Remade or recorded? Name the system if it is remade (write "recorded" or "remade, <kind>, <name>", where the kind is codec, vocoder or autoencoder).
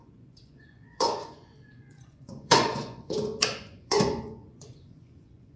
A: remade, vocoder, Vocos